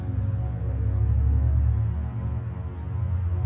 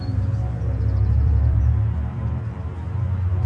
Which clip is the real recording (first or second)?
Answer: first